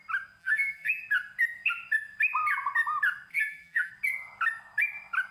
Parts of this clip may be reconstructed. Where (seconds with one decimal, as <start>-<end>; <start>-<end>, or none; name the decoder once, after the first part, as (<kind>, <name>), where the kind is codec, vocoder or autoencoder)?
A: 0.4-1.0 (vocoder, BigVGAN v2); 3.3-3.9